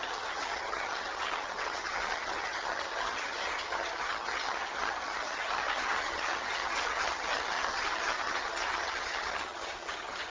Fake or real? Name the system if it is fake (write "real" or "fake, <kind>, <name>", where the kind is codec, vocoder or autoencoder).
fake, vocoder, HiFi-GAN